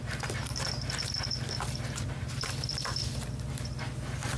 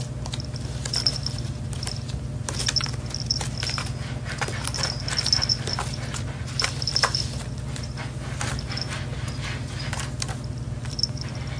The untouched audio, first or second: second